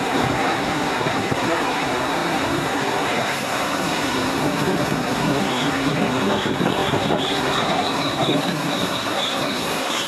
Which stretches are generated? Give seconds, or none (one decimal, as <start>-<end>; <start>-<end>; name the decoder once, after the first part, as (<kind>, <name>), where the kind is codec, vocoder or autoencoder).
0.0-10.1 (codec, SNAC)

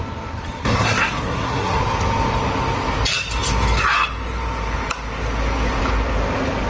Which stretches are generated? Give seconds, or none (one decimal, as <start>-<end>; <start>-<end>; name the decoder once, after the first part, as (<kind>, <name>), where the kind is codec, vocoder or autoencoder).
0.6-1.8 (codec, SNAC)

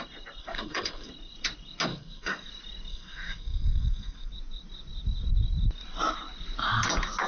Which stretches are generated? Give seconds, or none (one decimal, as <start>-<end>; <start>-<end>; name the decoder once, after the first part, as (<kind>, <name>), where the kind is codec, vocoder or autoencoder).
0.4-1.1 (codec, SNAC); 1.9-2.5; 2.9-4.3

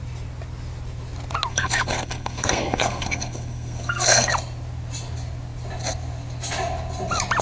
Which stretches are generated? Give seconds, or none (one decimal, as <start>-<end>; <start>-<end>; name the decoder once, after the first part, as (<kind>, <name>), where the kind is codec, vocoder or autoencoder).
1.5-4.3 (codec, SNAC)

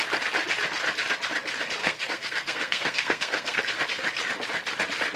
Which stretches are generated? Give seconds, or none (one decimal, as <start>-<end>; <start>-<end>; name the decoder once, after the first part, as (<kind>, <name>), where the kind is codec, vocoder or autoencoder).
1.8-3.6 (codec, SNAC)

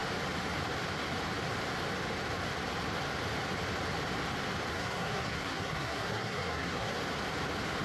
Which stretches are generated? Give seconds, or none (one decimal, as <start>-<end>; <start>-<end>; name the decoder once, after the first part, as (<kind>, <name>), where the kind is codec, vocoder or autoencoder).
4.7-7.0 (codec, SNAC)